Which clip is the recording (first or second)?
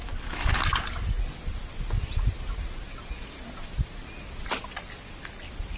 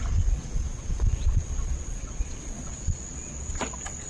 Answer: first